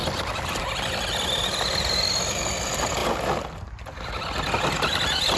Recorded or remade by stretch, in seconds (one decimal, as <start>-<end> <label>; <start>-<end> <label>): 0.0-0.6 remade; 0.6-3.0 recorded; 3.0-4.1 remade; 4.1-5.4 recorded